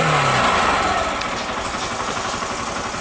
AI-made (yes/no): no